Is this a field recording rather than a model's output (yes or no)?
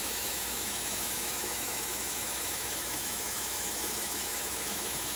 no